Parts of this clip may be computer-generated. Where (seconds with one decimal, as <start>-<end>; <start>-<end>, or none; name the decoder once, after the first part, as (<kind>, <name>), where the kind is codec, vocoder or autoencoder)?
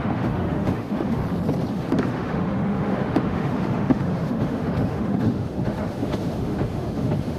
0.0-1.2 (autoencoder, DAC-VAE); 1.7-7.4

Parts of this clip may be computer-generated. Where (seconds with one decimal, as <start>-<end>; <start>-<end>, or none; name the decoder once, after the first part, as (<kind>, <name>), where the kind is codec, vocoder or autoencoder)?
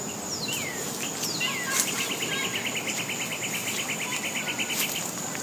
none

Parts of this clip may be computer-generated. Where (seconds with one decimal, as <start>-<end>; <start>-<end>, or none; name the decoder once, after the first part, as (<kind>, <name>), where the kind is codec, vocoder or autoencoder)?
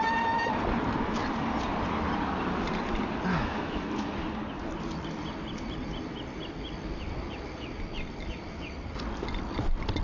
3.3-4.1 (autoencoder, DAC-VAE)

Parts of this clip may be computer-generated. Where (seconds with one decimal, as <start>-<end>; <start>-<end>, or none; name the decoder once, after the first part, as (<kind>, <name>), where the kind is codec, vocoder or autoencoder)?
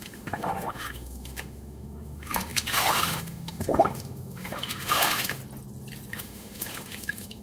0.0-5.4 (autoencoder, DAC-VAE); 6.1-7.4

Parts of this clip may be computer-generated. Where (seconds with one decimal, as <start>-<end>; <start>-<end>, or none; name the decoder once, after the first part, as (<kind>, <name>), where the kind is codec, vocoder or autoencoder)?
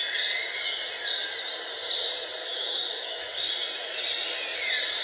2.4-3.5 (autoencoder, DAC-VAE)